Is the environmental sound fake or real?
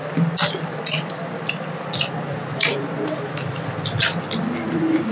real